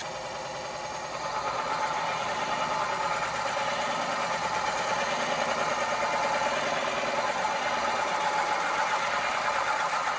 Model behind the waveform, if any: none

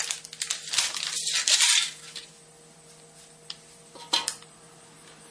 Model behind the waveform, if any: none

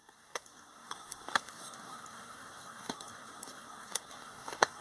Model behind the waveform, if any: codec, SNAC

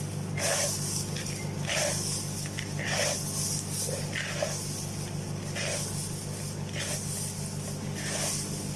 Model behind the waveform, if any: none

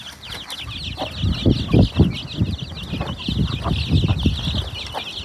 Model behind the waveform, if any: none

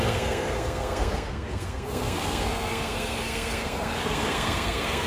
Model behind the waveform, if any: codec, SNAC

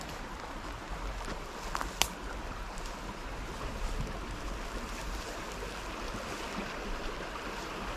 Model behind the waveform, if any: none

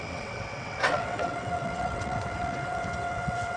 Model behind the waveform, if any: vocoder, WaveNeXt